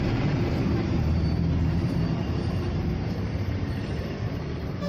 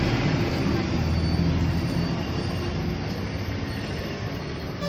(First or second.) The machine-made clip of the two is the first